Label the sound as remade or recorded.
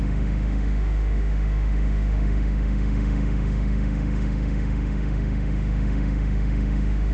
remade